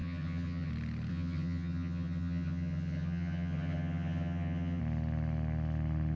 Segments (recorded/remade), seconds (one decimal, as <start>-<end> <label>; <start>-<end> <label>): 0.0-0.7 remade; 0.7-1.1 recorded; 1.1-4.8 remade; 4.8-6.2 recorded

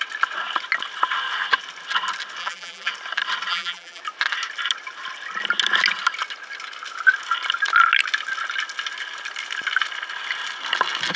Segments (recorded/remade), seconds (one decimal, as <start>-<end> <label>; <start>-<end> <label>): 0.0-2.4 recorded; 2.4-2.9 remade; 2.9-3.5 recorded; 3.5-4.0 remade; 4.0-11.2 recorded

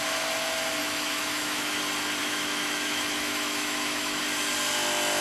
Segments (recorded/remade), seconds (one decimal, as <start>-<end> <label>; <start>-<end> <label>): 0.0-0.8 recorded; 0.8-1.8 remade; 1.8-2.2 recorded; 2.2-4.2 remade; 4.2-5.2 recorded